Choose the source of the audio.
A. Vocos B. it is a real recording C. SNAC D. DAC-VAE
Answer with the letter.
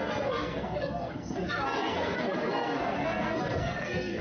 C